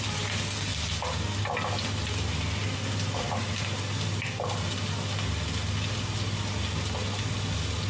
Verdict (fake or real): real